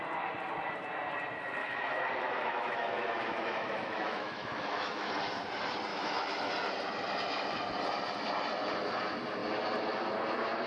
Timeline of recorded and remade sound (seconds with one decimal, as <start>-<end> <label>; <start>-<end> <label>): 0.0-1.6 recorded; 1.6-5.1 remade; 5.1-5.9 recorded; 5.9-6.5 remade; 6.5-10.7 recorded